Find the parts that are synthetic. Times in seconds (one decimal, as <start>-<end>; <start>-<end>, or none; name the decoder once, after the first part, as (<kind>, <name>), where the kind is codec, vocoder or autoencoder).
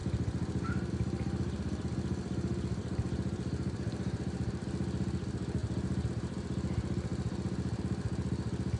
none